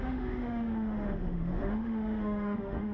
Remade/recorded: remade